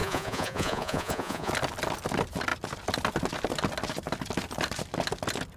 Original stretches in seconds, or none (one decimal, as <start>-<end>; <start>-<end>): 1.5-5.6